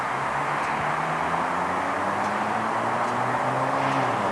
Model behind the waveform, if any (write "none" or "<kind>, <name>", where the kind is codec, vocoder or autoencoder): none